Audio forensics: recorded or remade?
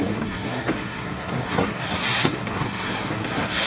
remade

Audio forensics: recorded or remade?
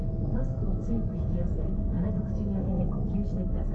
remade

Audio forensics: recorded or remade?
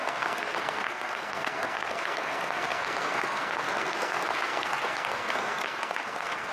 remade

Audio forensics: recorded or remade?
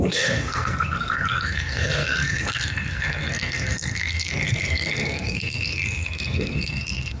remade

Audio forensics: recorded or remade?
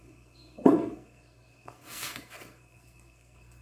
remade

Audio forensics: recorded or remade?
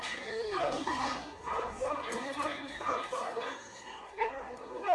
remade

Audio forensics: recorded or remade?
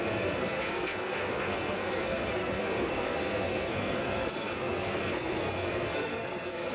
remade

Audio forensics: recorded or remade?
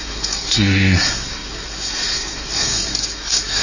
remade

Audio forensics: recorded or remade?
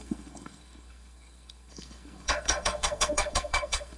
remade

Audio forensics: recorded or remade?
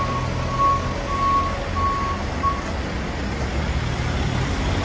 recorded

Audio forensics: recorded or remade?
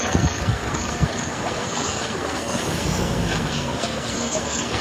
remade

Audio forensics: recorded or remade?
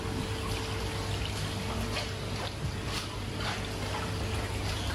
recorded